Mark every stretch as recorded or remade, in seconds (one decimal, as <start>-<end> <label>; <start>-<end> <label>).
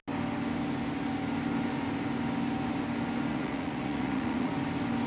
0.0-3.3 recorded; 3.3-4.5 remade; 4.5-5.1 recorded